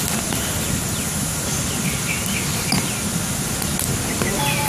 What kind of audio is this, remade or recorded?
recorded